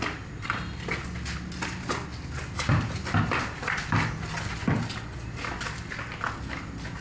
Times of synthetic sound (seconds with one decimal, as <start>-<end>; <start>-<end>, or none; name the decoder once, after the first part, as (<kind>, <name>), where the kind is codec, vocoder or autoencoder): none